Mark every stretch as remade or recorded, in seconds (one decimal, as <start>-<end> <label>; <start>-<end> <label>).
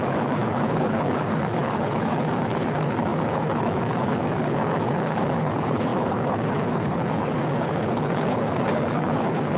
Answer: 0.0-9.6 remade